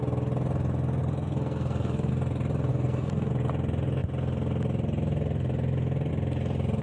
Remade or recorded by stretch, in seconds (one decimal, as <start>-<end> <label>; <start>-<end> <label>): 0.0-1.0 recorded; 1.0-2.1 remade; 2.1-2.7 recorded; 2.7-3.3 remade; 3.3-6.8 recorded